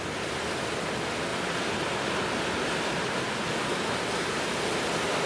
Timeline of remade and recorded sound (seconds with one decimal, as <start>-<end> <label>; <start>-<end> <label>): 0.0-1.3 recorded; 1.3-4.5 remade; 4.5-5.3 recorded